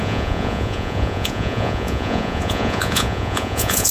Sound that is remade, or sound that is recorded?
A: remade